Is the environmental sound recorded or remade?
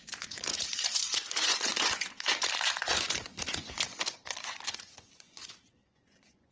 remade